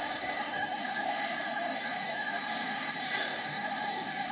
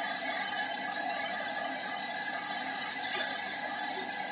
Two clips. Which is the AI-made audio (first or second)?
first